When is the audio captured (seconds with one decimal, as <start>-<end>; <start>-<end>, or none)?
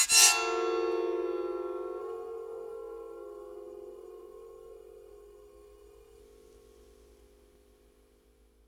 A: 0.0-2.0; 6.2-8.7